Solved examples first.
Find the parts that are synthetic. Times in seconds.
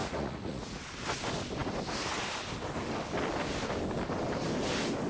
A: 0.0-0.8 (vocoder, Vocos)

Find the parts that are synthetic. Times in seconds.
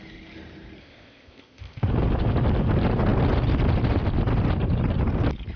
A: 0.8-1.9 (codec, ZipCodec)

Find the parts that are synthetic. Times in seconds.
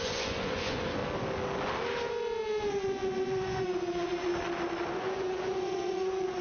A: 0.0-1.0 (vocoder, Vocos); 2.7-4.3; 4.9-6.4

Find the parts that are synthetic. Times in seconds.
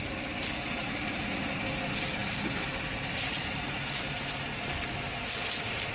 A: 0.8-1.6 (vocoder, Vocos)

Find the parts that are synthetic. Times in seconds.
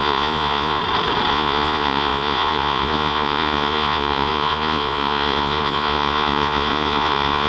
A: 0.0-0.8 (vocoder, Vocos); 1.3-7.5